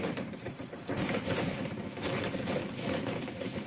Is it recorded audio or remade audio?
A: remade